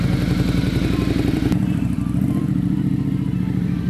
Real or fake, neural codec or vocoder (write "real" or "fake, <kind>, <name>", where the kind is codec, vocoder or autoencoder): fake, vocoder, BigVGAN v2